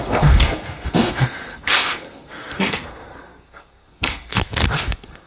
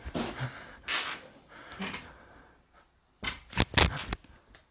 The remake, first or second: first